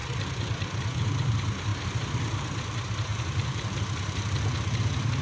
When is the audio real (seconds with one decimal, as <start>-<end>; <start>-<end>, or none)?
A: 0.0-5.2